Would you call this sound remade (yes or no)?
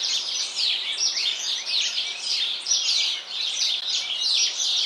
yes